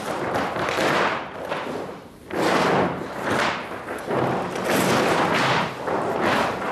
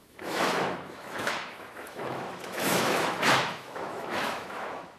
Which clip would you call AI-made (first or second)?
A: second